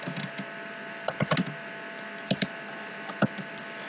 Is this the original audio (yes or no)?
yes